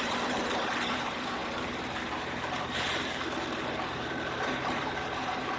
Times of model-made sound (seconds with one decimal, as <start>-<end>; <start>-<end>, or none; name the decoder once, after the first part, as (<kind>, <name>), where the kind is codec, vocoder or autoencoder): 0.0-5.6 (vocoder, BigVGAN v2)